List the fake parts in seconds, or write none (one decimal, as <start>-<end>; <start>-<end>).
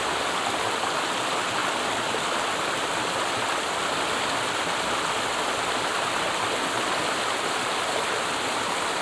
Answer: none